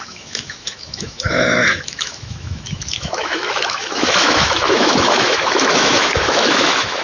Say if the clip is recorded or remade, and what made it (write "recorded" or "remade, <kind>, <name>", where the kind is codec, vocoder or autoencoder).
remade, autoencoder, DAC-VAE